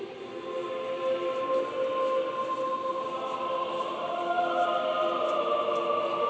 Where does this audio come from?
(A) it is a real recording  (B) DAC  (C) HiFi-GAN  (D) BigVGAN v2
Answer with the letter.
A